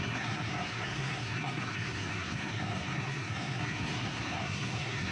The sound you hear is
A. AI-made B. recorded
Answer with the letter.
A